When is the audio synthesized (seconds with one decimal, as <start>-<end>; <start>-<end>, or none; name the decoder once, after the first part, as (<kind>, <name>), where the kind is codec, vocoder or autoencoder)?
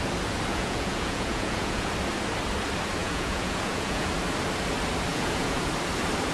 0.5-1.9 (vocoder, Vocos); 3.0-4.1; 5.1-5.7